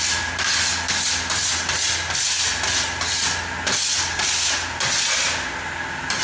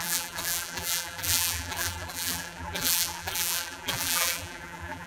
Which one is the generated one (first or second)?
second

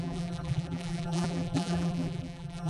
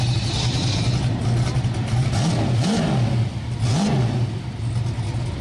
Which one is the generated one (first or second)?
first